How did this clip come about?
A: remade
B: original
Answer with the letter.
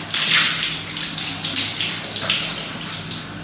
B